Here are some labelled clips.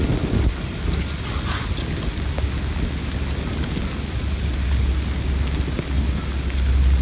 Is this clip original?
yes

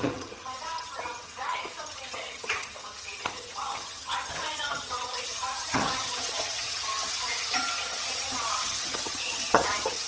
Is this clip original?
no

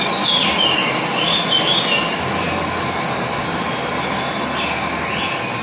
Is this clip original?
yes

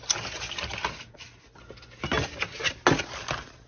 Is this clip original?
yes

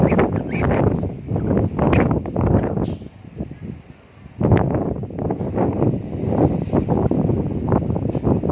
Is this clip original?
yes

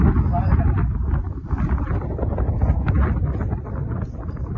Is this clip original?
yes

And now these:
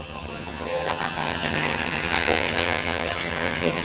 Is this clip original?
no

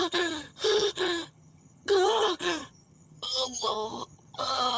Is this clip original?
no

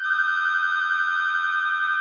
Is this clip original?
no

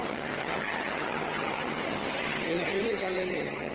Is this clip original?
no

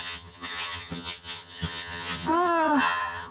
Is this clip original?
no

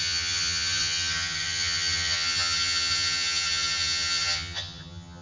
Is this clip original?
no